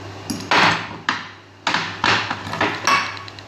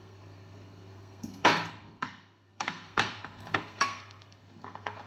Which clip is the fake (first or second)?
second